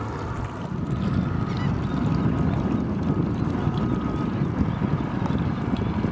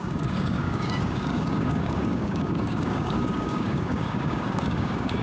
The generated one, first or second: second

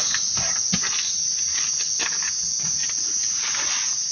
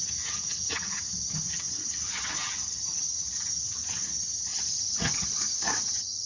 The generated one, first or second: second